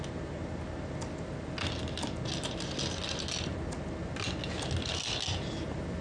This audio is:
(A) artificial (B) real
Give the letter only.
B